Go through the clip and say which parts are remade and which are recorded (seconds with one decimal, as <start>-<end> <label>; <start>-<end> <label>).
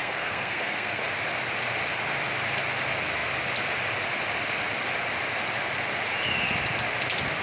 0.0-1.0 remade; 1.0-7.4 recorded